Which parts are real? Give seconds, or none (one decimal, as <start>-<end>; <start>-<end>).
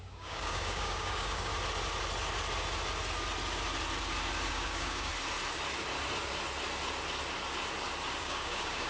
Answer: 1.5-4.5; 5.1-8.2